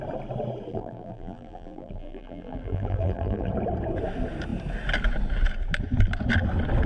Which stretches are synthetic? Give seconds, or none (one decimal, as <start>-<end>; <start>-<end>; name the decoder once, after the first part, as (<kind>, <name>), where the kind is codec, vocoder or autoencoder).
0.7-3.5 (vocoder, BigVGAN v2)